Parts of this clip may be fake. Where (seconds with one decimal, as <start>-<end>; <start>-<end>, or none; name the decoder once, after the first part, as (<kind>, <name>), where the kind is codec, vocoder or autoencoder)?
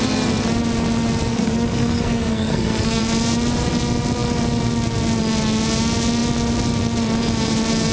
1.3-3.0 (codec, SNAC)